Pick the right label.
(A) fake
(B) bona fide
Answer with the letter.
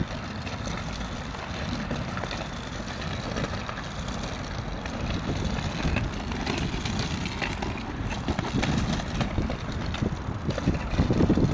B